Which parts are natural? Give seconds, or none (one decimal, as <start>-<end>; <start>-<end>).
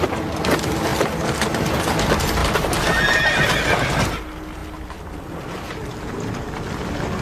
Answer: 0.0-2.4; 3.0-7.2